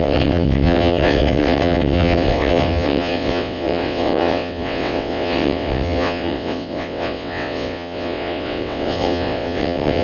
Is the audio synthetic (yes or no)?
yes